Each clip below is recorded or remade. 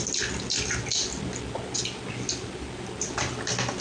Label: recorded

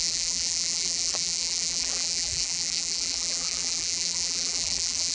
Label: remade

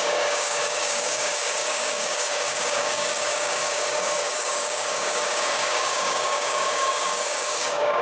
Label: remade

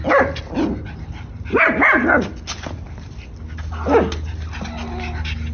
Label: recorded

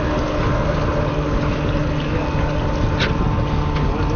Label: recorded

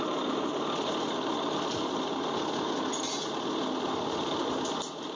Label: recorded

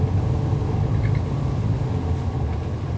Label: recorded